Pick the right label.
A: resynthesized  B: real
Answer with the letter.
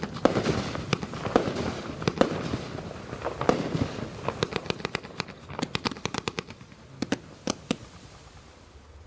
B